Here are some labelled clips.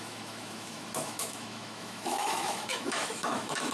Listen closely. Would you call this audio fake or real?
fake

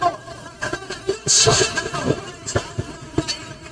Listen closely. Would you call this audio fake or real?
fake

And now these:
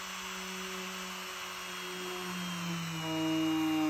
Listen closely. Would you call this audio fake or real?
real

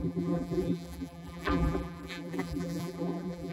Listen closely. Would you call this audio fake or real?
fake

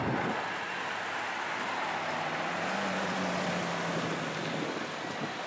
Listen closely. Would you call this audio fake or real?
real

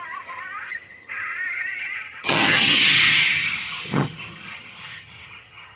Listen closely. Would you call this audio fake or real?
fake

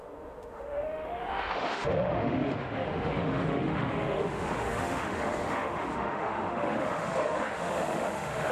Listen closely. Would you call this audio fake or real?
fake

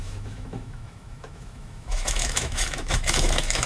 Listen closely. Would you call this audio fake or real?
fake